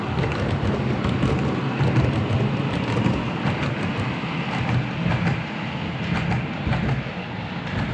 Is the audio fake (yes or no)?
no